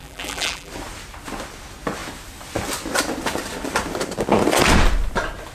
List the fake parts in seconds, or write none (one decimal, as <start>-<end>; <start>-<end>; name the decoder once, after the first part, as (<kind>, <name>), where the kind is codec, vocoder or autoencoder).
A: 0.0-0.7 (vocoder, BigVGAN v2)